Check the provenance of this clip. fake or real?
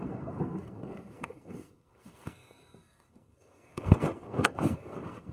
fake